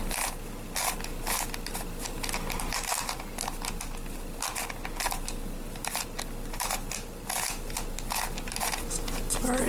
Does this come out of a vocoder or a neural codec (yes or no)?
no